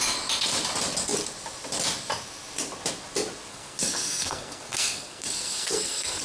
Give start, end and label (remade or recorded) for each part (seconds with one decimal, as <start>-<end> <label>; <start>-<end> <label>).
0.0-3.5 recorded; 3.5-6.2 remade